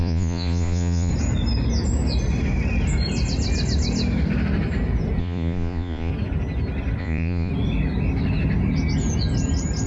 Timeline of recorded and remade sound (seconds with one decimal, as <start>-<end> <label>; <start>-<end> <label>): 0.0-1.1 remade; 1.1-5.2 recorded; 5.2-6.1 remade; 6.1-7.0 recorded; 7.0-7.5 remade; 7.5-9.9 recorded